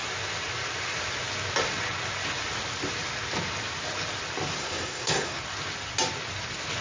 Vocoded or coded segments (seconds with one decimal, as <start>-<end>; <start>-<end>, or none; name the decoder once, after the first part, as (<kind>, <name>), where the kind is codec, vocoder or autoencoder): 4.6-5.4 (codec, SNAC)